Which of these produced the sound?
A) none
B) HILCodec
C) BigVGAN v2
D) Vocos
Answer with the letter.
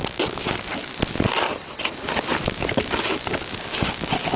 A